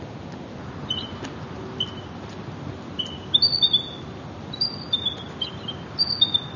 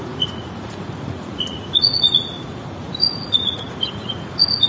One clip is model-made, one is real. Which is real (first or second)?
first